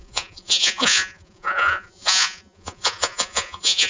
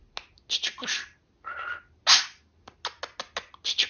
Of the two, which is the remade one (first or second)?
first